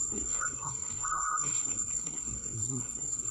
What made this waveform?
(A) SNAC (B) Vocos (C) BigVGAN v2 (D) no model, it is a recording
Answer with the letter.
A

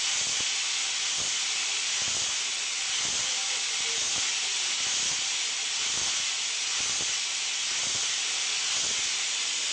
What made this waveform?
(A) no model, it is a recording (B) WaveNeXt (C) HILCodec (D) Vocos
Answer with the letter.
A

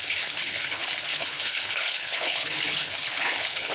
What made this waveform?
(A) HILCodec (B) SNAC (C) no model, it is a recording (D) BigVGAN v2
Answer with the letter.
A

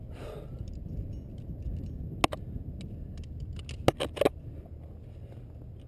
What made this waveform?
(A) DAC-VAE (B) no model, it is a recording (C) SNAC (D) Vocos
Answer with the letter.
B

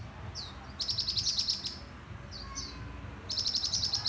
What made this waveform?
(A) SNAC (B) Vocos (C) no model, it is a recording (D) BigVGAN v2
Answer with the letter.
C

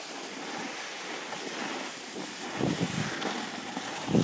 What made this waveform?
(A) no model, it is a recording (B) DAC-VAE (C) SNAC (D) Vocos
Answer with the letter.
A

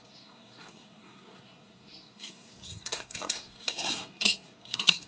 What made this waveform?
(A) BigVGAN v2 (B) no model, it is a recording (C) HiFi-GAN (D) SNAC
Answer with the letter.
D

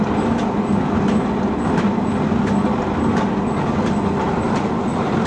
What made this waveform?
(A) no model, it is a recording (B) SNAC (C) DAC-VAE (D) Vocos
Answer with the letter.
A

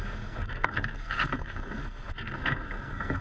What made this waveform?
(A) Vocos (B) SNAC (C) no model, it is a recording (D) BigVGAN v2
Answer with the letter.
B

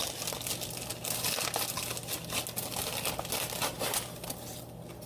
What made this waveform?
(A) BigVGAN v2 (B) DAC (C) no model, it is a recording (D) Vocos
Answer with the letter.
C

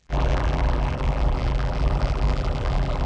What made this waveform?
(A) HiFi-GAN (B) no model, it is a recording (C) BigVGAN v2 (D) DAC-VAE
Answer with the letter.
C